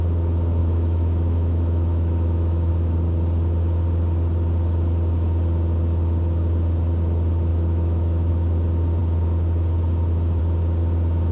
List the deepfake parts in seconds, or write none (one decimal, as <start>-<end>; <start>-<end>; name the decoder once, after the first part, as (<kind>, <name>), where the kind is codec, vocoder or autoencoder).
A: 0.6-2.7 (autoencoder, DAC-VAE); 7.5-8.3